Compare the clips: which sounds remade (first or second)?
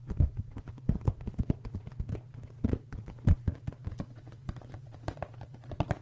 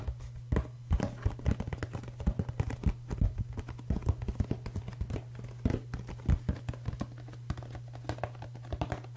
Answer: first